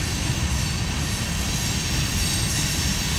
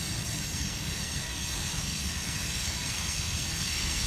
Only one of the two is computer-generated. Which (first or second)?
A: second